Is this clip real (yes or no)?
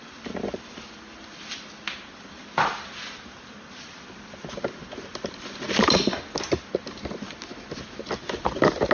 yes